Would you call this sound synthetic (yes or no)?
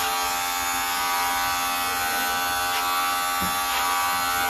no